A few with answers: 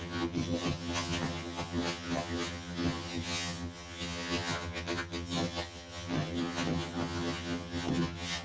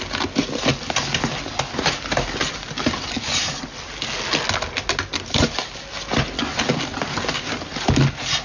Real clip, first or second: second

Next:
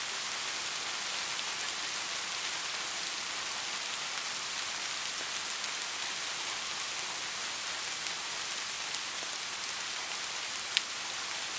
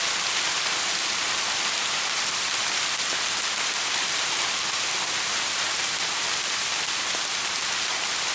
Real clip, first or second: first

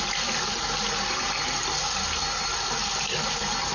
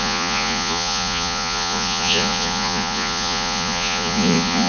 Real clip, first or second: first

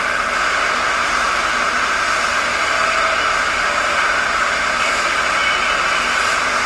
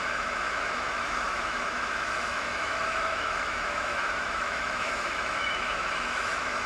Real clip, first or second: first